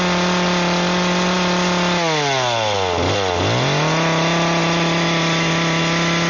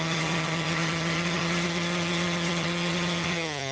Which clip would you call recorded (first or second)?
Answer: first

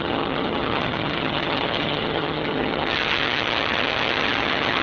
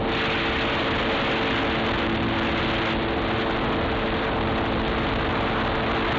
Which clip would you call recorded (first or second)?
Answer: second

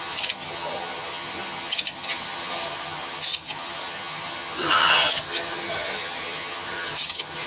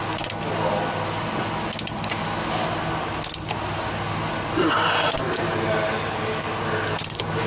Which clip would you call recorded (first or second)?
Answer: second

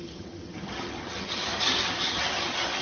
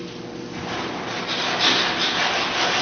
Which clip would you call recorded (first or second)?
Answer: second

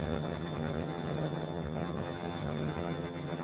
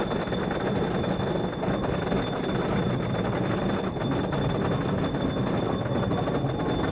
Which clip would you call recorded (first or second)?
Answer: second